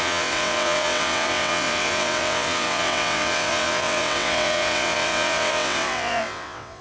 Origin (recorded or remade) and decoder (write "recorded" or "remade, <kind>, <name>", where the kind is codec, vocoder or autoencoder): remade, vocoder, WaveNeXt